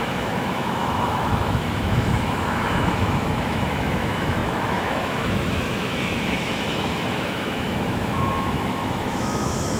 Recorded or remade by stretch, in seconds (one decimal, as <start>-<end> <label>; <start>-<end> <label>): 0.0-9.8 remade

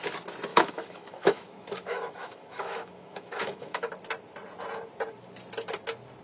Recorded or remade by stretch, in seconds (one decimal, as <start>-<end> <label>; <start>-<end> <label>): 0.0-0.5 recorded; 0.5-3.9 remade; 3.9-6.2 recorded